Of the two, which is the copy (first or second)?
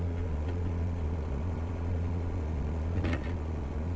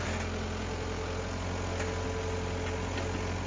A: first